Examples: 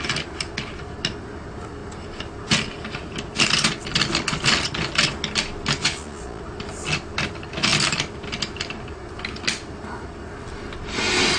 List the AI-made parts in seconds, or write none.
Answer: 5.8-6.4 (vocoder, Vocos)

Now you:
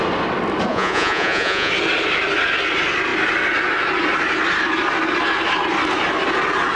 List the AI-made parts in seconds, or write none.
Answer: 0.7-1.7 (vocoder, Vocos)

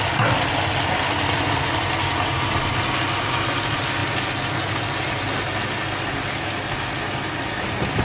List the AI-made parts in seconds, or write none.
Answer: none

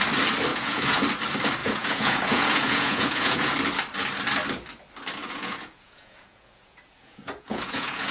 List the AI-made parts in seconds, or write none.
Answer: 0.5-1.0 (vocoder, Vocos); 1.6-3.5; 5.2-8.1

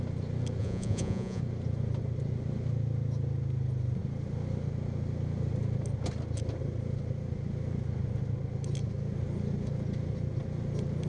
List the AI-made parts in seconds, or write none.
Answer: 0.6-1.4 (vocoder, Vocos)

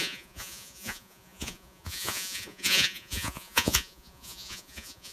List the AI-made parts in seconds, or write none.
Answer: 0.0-5.1 (vocoder, Vocos)

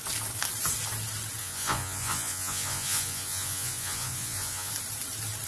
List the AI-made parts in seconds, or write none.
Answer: 1.4-4.7 (vocoder, Vocos)

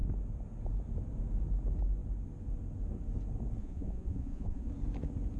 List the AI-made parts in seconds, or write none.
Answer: 3.6-4.7 (vocoder, Vocos)